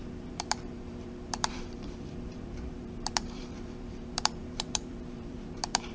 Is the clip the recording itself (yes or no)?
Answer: no